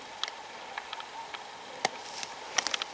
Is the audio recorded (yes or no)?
yes